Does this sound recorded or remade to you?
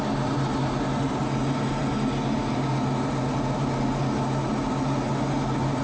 recorded